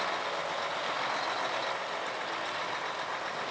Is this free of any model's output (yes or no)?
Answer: yes